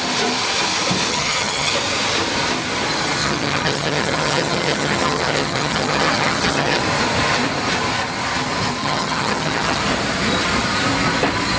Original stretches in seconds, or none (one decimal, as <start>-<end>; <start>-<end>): 0.0-1.1; 1.7-3.2; 6.8-8.8; 9.8-11.6